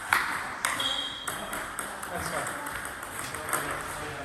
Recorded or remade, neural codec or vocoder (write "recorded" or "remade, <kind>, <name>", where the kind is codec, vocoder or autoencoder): remade, vocoder, BigVGAN v2